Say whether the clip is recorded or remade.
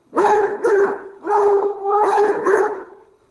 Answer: remade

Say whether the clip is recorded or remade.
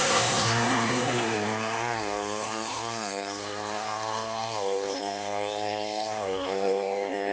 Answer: remade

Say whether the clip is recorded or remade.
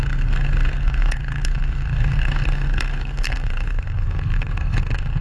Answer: remade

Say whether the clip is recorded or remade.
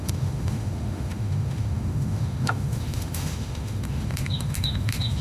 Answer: remade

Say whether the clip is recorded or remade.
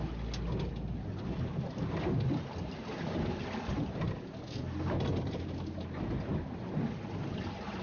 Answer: recorded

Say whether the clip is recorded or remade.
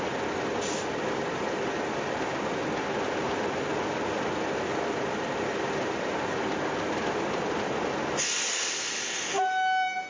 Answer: recorded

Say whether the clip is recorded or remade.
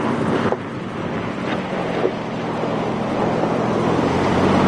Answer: remade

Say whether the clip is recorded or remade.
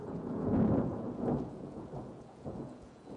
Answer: remade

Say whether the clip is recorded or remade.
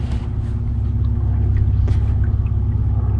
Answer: recorded